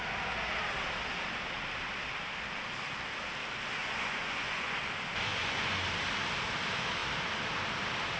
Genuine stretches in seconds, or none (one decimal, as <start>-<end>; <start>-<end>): 0.0-3.8; 4.8-5.3; 5.8-8.2